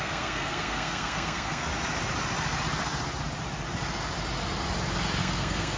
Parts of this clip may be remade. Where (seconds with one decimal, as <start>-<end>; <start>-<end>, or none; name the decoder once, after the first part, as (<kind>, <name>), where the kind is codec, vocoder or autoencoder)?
0.0-1.7 (codec, SNAC); 5.2-5.8